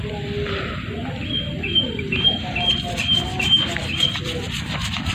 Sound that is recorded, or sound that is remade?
recorded